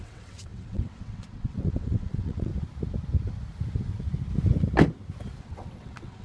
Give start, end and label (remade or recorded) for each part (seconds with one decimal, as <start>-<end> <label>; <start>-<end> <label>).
0.0-2.5 remade; 2.5-5.4 recorded; 5.4-6.2 remade